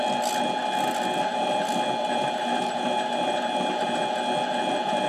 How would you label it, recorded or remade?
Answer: recorded